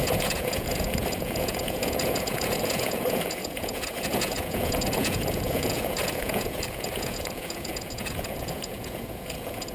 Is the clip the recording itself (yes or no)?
no